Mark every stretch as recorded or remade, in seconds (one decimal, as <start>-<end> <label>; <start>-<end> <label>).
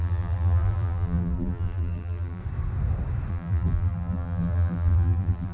0.0-2.4 remade; 2.4-3.3 recorded; 3.3-5.5 remade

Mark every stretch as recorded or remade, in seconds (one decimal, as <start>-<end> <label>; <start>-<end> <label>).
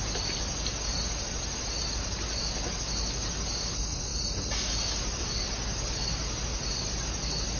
0.0-7.6 recorded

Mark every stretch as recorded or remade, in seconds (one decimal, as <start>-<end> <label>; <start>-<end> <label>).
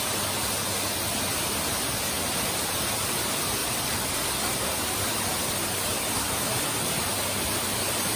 0.0-8.2 recorded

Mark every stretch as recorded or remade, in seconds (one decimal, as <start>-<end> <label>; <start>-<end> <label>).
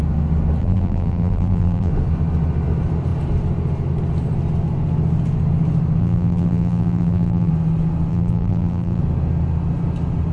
0.0-0.6 recorded; 0.6-1.9 remade; 1.9-6.0 recorded; 6.0-7.5 remade; 7.5-8.1 recorded; 8.1-9.0 remade; 9.0-10.3 recorded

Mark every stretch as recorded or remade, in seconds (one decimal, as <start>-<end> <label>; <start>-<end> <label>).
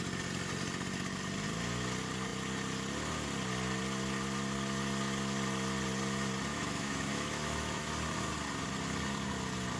0.0-6.5 recorded; 6.5-7.9 remade; 7.9-9.8 recorded